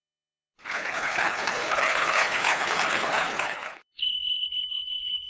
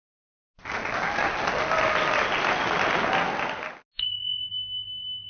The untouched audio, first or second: second